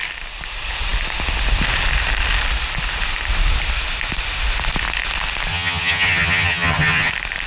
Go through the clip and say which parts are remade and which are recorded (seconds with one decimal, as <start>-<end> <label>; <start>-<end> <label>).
0.0-5.5 recorded; 5.5-7.1 remade; 7.1-7.5 recorded